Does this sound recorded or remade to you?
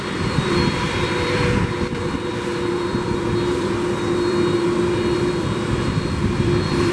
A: remade